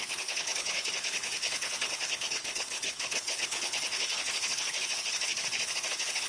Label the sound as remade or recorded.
remade